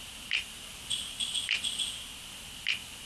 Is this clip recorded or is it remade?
recorded